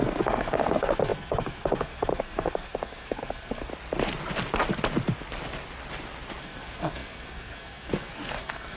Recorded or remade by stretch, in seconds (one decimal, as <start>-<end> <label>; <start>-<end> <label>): 0.0-3.7 remade; 3.7-6.4 recorded; 6.4-8.8 remade